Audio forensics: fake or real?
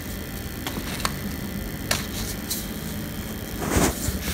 fake